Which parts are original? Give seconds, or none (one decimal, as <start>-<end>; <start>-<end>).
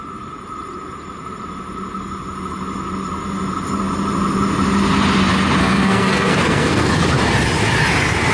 0.0-5.6; 6.9-8.3